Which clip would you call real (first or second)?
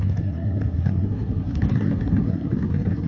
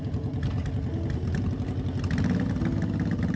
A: second